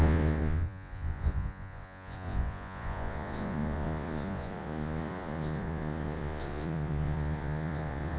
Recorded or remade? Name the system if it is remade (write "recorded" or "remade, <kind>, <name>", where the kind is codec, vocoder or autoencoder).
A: remade, vocoder, Vocos